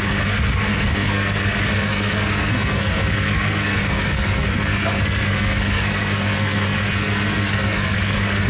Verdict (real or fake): fake